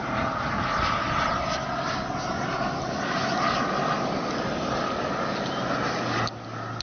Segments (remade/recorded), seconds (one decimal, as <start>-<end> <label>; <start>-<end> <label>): 0.0-6.8 recorded